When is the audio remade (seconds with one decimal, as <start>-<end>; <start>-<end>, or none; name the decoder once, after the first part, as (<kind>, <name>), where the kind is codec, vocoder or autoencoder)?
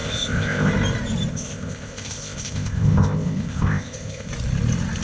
0.0-0.7 (codec, ZipCodec); 1.3-4.3